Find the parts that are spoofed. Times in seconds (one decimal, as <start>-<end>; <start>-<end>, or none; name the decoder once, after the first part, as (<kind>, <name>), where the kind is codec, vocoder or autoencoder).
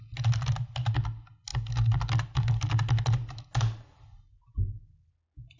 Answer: none